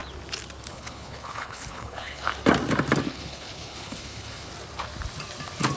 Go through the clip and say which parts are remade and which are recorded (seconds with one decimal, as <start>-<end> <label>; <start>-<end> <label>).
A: 0.0-0.7 recorded; 0.7-2.3 remade; 2.3-3.1 recorded; 3.1-4.5 remade; 4.5-5.8 recorded